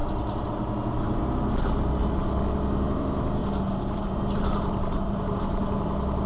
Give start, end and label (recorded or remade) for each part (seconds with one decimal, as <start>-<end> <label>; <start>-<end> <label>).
0.0-1.2 remade; 1.2-3.4 recorded; 3.4-5.4 remade; 5.4-6.3 recorded